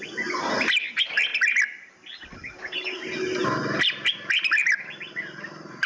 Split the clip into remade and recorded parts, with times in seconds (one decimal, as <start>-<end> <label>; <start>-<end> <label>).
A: 0.0-5.9 recorded